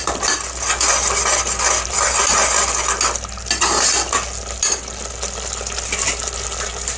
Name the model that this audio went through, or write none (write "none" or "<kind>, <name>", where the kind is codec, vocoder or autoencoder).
none